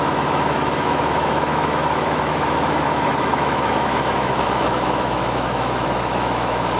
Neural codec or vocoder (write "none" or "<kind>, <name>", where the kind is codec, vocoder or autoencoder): autoencoder, DAC-VAE